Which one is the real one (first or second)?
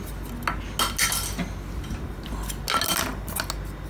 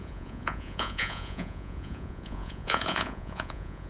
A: first